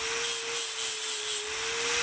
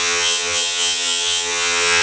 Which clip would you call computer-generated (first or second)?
second